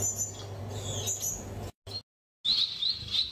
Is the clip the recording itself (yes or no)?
yes